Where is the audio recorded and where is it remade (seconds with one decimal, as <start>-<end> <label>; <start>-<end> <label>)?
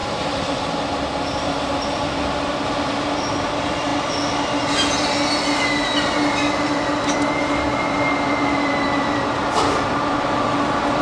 0.0-11.0 recorded